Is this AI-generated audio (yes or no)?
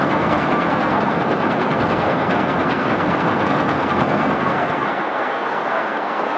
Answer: yes